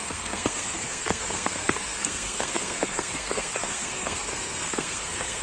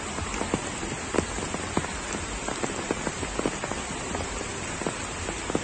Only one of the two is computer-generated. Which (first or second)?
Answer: first